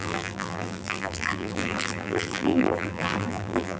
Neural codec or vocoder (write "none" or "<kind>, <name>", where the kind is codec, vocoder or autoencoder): vocoder, BigVGAN v2